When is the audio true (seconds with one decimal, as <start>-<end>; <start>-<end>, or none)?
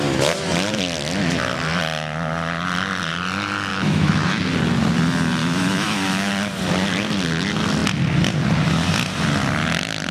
0.0-3.7; 4.4-5.4; 6.3-10.1